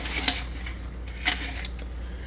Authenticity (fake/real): real